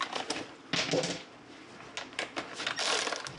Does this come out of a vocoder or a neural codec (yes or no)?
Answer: no